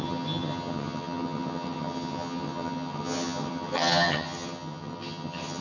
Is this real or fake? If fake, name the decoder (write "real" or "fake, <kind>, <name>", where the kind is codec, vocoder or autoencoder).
fake, vocoder, HiFi-GAN